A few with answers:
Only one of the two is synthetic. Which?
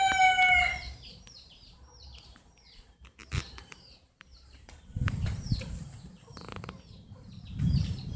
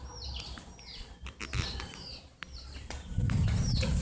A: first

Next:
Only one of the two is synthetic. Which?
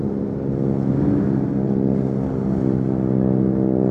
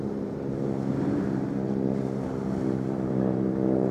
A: second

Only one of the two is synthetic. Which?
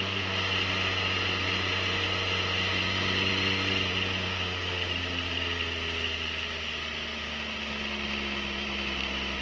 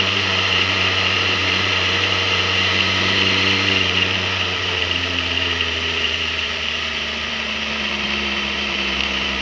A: second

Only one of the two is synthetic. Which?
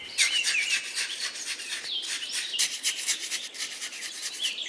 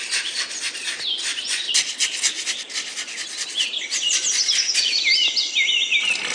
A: first